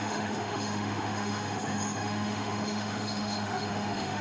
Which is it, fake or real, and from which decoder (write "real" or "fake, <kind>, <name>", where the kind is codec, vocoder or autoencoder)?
fake, autoencoder, DAC-VAE